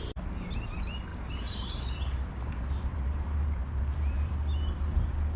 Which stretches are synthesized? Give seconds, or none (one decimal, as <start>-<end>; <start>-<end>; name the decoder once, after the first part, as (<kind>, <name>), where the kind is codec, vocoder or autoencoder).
1.1-4.3 (vocoder, BigVGAN v2)